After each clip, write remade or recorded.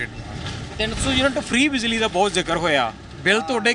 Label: recorded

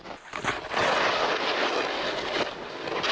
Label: recorded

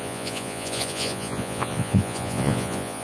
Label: remade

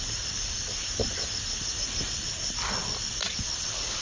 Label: recorded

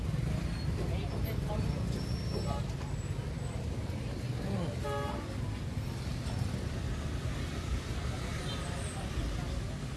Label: recorded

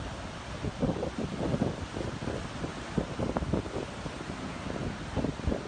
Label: recorded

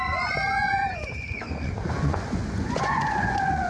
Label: remade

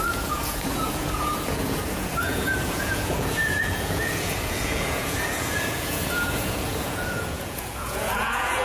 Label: remade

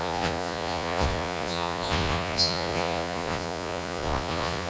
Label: remade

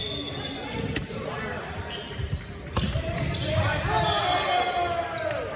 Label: recorded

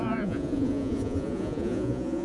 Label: remade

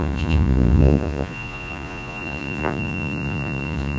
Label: remade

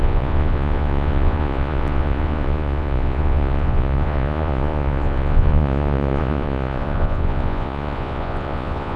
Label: remade